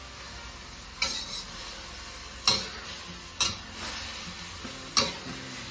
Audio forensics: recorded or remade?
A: recorded